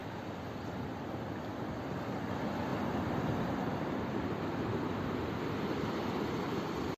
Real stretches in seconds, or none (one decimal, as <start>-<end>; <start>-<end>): 0.0-7.0